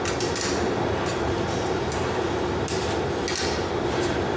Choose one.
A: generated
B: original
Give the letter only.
B